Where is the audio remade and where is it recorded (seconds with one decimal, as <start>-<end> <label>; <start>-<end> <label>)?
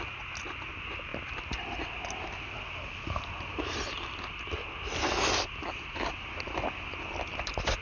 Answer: 0.0-7.8 recorded